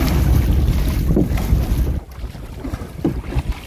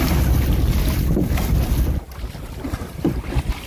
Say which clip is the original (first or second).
first